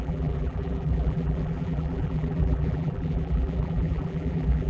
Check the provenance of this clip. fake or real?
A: fake